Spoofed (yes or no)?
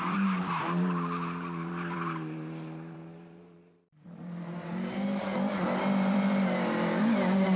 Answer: yes